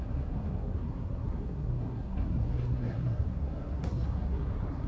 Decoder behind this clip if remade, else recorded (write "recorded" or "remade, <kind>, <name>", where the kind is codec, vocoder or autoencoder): remade, codec, SNAC